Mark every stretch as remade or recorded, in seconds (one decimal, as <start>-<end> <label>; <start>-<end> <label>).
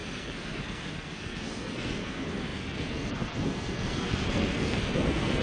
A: 0.0-5.4 remade